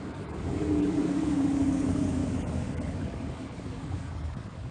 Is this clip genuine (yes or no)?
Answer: no